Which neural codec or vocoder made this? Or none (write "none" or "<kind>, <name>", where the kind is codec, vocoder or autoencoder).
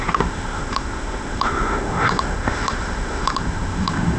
autoencoder, DAC-VAE